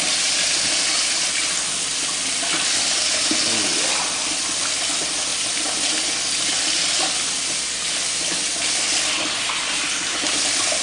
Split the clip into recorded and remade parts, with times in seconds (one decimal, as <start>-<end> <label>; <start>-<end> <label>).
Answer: 0.0-5.3 recorded; 5.3-5.9 remade; 5.9-10.8 recorded